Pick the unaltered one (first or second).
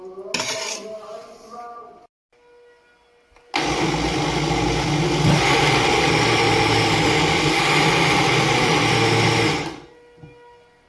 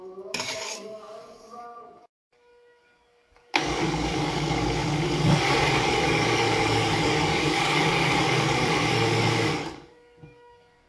first